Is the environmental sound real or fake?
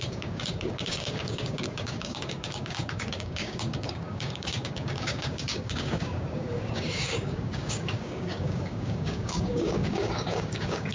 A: fake